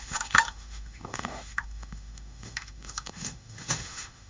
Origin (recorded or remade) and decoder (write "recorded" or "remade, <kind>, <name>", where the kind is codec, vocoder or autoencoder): remade, autoencoder, DAC-VAE